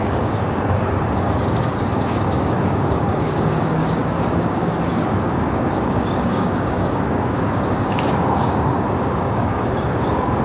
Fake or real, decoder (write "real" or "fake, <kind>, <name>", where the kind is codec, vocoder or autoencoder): fake, codec, DAC